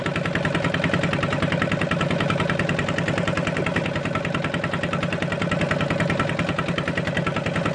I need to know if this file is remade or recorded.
recorded